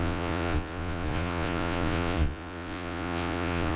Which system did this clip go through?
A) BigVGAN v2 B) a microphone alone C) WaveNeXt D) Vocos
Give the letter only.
D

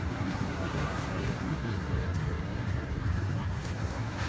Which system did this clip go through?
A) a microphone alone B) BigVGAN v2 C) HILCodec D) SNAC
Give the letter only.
D